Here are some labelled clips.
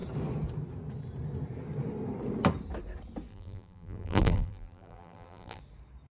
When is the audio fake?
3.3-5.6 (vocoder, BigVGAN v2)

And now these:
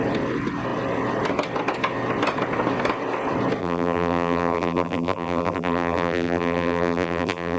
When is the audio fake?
3.6-7.6 (vocoder, BigVGAN v2)

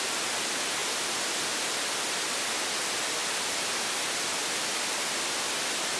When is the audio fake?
0.8-1.4 (vocoder, BigVGAN v2); 3.2-3.7

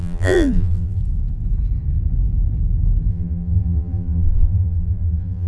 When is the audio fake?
0.0-1.0 (vocoder, BigVGAN v2); 3.1-5.5

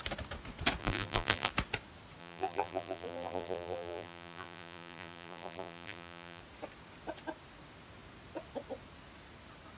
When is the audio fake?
0.8-1.5 (vocoder, BigVGAN v2); 2.2-6.4